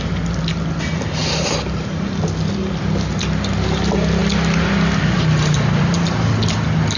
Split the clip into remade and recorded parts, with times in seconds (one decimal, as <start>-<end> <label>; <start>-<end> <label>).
0.0-7.0 recorded

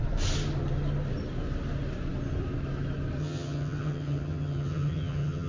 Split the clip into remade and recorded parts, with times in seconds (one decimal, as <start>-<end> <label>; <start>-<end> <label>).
0.0-3.2 recorded; 3.2-5.5 remade

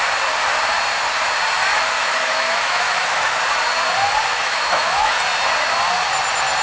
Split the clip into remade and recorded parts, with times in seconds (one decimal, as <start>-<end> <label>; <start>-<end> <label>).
0.0-2.0 recorded; 2.0-3.4 remade; 3.4-4.3 recorded; 4.3-5.1 remade; 5.1-6.6 recorded

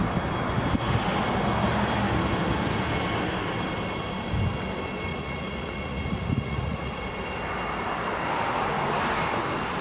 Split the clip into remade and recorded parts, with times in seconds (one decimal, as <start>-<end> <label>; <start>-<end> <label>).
0.0-5.1 recorded; 5.1-7.0 remade; 7.0-9.8 recorded

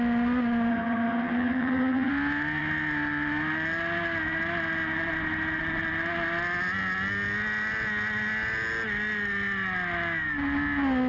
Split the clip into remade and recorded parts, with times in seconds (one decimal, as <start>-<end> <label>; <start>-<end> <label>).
0.0-0.7 recorded; 0.7-2.1 remade; 2.1-11.1 recorded

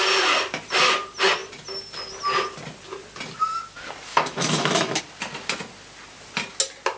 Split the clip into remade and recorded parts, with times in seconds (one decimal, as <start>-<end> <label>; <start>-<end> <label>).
0.0-4.1 recorded; 4.1-5.0 remade; 5.0-7.0 recorded

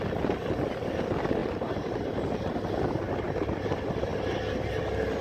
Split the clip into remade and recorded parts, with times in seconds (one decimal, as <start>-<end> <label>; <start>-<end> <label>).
0.0-5.2 recorded

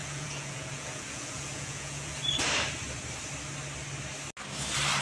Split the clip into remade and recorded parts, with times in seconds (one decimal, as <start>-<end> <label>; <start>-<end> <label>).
0.0-2.2 remade; 2.2-5.0 recorded